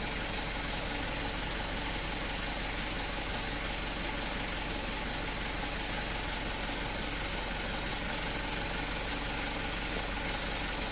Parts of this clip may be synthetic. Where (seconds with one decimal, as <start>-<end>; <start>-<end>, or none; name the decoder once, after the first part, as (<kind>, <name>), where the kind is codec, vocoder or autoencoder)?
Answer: none